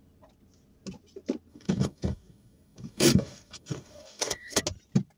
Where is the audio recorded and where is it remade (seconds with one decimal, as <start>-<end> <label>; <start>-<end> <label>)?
0.0-1.5 recorded; 1.5-4.6 remade; 4.6-5.2 recorded